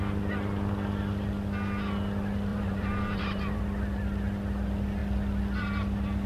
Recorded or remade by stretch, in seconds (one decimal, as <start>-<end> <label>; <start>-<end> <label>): 0.0-2.5 recorded; 2.5-3.6 remade; 3.6-6.3 recorded